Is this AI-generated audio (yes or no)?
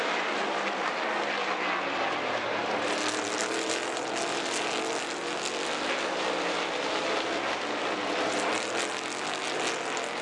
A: no